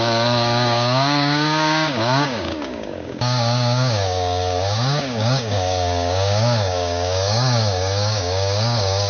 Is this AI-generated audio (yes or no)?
yes